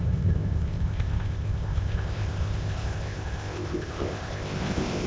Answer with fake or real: fake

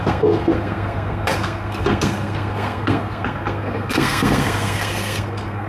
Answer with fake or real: fake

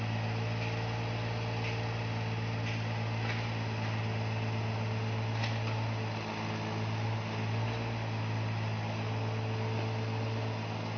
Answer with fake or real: real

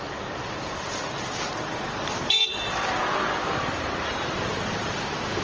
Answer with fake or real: real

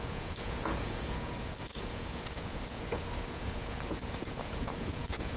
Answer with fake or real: fake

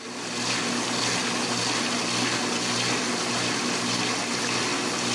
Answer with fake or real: real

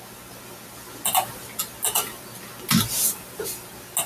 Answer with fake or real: real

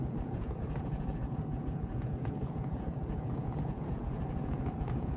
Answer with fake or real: fake